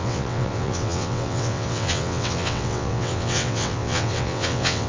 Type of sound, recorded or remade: remade